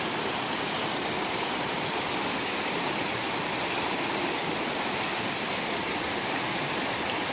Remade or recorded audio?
recorded